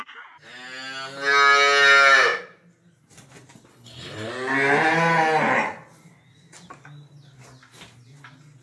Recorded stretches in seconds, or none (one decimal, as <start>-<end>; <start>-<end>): 0.0-3.7; 4.3-8.6

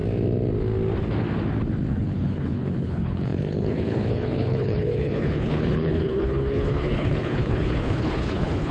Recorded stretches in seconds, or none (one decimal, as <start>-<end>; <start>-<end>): 0.0-1.9

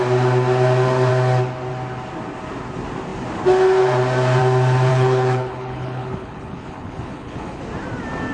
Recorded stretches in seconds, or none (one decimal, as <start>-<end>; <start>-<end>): 0.0-4.9; 7.6-8.3

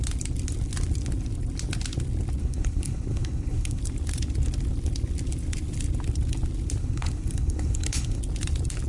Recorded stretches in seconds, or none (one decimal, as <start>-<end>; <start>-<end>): 0.0-2.4; 3.8-6.8; 8.2-8.9

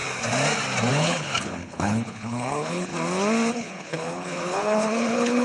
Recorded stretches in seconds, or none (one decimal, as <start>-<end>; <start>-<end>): 0.0-0.9; 2.9-3.5